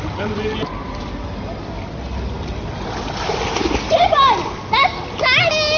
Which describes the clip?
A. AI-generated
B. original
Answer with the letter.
B